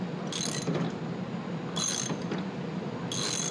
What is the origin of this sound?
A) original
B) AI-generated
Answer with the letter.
A